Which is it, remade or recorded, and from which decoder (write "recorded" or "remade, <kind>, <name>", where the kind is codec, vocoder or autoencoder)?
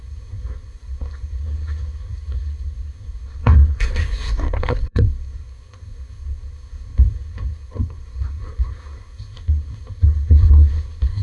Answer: remade, codec, SNAC